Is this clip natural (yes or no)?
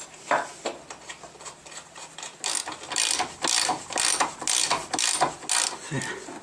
yes